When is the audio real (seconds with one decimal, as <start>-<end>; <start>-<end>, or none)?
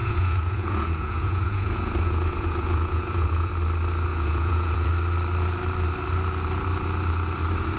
3.5-4.1; 4.9-7.8